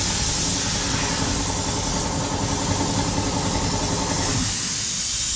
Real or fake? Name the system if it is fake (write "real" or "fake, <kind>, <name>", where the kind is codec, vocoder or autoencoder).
real